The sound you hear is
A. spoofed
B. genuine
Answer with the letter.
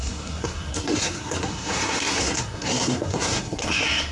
A